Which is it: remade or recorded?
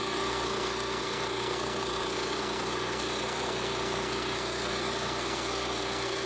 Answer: remade